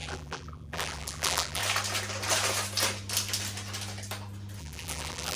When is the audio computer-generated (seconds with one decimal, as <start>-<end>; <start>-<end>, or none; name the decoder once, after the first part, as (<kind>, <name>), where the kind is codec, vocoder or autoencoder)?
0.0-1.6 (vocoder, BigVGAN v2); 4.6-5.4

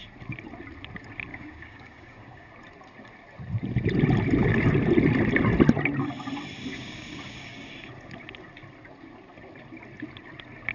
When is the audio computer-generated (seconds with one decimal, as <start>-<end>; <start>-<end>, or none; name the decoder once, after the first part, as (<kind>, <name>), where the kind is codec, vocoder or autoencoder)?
1.3-2.5 (codec, DAC); 6.7-7.7

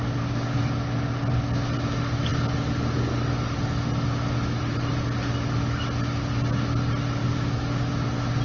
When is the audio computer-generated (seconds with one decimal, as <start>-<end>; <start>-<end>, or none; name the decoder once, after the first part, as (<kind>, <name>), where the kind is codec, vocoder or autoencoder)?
0.0-0.6 (codec, DAC); 7.2-7.9

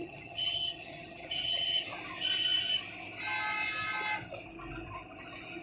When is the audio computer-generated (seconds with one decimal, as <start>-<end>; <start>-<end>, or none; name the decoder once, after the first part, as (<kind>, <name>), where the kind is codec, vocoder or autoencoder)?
0.0-1.9 (vocoder, HiFi-GAN)

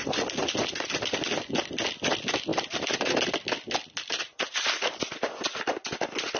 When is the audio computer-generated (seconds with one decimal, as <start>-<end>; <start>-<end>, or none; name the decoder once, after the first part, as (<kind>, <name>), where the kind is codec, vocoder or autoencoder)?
none

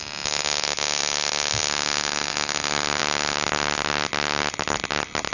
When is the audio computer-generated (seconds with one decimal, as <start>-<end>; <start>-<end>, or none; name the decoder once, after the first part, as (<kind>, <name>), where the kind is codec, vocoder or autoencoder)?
none